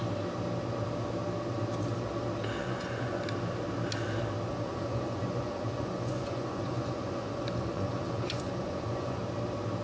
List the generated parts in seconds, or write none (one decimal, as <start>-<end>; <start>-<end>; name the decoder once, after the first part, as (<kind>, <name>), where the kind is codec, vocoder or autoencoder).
2.6-3.2 (vocoder, Vocos); 4.5-9.2